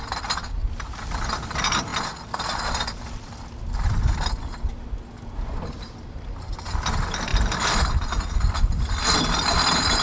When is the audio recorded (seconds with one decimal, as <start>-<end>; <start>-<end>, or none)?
0.0-10.0